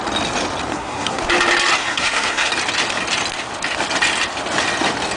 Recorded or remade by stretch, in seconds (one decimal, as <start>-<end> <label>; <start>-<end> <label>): 0.0-0.7 recorded; 0.7-1.2 remade; 1.2-1.8 recorded; 1.8-2.5 remade; 2.5-5.2 recorded